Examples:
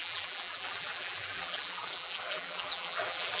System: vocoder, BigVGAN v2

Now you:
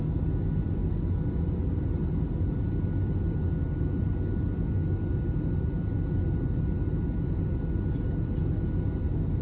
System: none